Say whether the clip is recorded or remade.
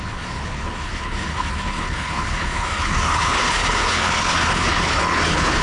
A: remade